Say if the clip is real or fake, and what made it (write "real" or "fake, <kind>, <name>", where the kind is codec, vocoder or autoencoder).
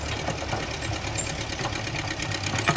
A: real